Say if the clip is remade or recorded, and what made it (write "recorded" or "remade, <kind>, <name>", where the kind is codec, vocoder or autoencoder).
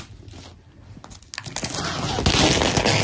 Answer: recorded